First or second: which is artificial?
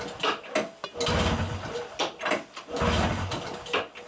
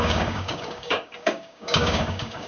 second